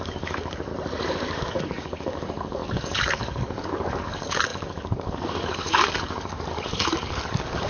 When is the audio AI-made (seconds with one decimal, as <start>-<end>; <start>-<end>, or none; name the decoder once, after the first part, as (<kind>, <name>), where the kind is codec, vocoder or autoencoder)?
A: 0.0-0.7 (codec, DAC); 1.4-7.7